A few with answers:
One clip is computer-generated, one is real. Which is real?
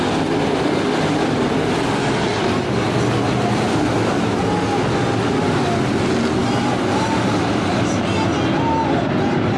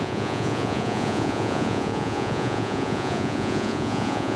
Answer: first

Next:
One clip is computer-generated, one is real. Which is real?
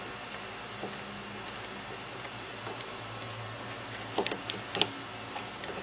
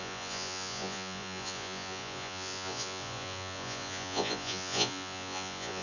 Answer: first